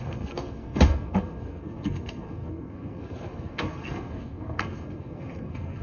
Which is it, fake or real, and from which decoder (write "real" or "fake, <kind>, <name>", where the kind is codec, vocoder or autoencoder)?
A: fake, codec, SNAC